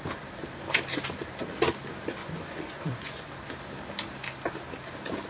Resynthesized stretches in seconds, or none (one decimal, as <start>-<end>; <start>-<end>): 2.2-3.3